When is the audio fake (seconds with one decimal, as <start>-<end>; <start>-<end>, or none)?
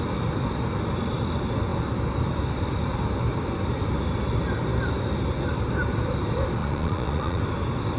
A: 6.6-7.4